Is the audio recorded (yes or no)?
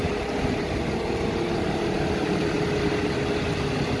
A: yes